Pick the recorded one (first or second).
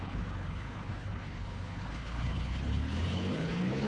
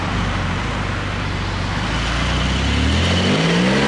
second